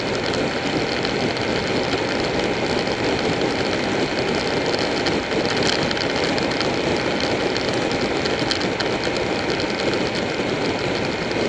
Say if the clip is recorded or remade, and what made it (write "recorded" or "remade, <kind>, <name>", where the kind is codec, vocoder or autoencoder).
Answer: recorded